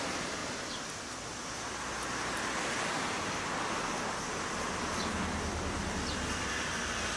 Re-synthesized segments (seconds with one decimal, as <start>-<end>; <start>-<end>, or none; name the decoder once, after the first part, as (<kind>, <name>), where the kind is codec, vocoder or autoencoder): none